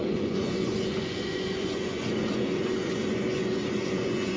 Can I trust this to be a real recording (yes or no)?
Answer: no